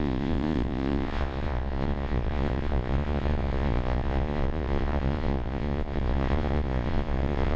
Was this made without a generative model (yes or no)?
no